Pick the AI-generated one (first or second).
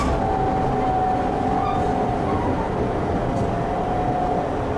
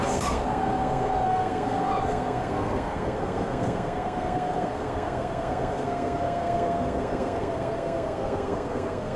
second